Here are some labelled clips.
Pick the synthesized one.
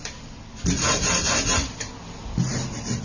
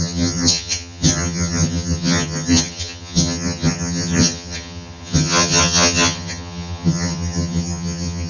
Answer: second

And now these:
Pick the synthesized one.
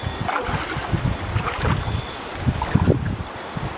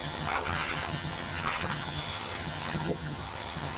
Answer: second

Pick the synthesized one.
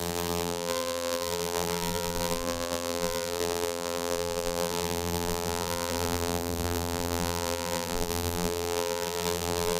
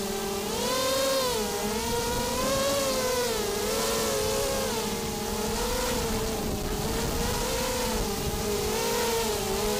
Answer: first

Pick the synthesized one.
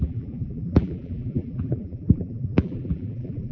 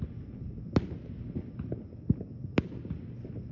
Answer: first